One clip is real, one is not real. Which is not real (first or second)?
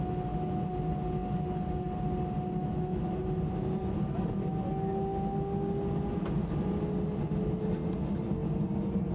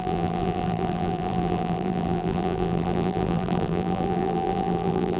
second